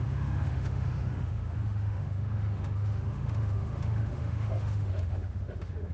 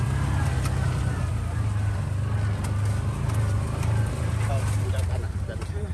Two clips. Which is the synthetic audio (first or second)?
first